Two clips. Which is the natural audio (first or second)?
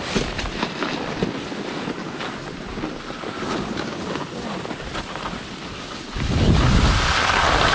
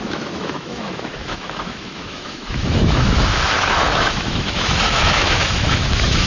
first